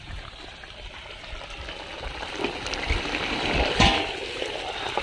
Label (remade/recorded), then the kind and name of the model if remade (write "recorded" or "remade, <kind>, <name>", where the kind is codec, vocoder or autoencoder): recorded